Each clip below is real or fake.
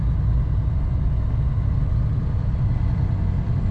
real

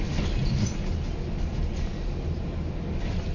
real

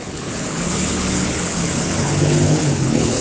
fake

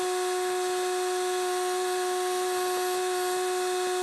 real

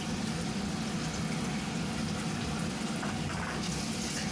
real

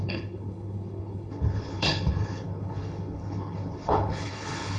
fake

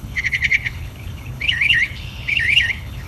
fake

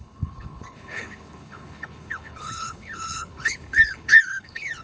fake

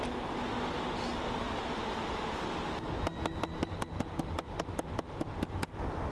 real